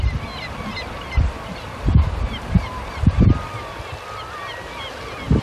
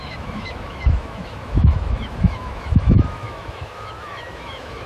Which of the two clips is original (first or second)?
first